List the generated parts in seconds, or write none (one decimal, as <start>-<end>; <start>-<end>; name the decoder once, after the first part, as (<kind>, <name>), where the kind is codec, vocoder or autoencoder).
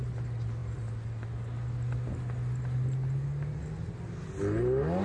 none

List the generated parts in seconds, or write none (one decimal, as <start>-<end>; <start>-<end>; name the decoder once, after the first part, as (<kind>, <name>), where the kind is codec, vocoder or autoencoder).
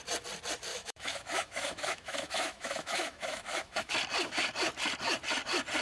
0.7-3.9 (autoencoder, DAC-VAE)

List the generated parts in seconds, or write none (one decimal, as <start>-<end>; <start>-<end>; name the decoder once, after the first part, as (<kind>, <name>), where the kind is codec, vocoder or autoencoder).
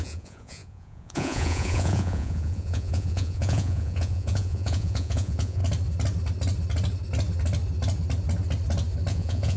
0.0-5.6 (vocoder, Vocos); 9.1-9.6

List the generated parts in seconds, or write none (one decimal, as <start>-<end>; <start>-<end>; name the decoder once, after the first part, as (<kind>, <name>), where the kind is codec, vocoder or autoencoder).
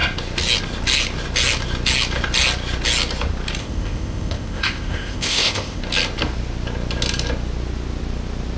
3.6-5.8 (codec, ZipCodec)